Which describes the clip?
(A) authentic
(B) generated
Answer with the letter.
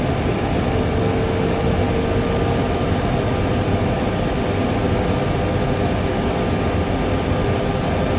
A